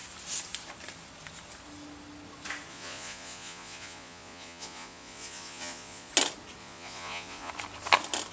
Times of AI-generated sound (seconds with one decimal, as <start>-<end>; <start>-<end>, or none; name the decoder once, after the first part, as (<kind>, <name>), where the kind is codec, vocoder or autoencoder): 2.7-6.1 (vocoder, Vocos); 6.6-7.5